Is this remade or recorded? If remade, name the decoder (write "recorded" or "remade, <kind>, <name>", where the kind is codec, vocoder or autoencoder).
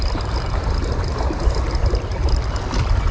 recorded